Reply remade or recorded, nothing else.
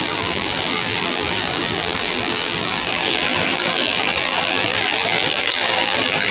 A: remade